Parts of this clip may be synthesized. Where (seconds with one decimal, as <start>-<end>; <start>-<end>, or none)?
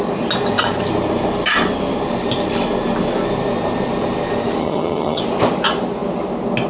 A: 4.6-5.2